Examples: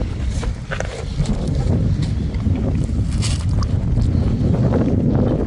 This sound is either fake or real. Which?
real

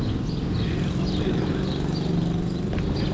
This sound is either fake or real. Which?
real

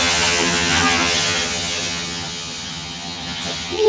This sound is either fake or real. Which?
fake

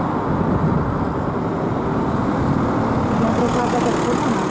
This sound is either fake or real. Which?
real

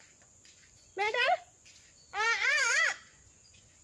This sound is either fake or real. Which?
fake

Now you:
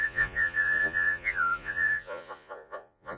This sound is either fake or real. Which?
fake